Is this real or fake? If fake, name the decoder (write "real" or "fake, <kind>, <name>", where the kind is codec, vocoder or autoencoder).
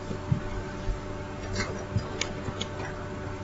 real